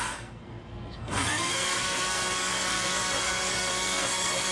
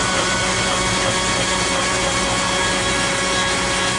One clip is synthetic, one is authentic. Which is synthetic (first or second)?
first